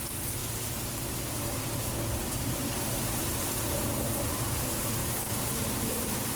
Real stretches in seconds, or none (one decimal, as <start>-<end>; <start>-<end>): 0.0-5.0